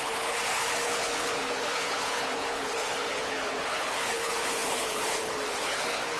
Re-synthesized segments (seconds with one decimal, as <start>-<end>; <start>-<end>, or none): 0.0-6.2